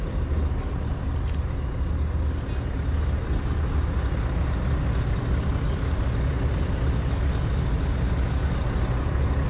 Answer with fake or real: real